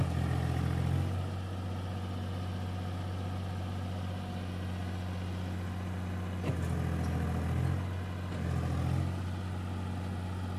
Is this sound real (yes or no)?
yes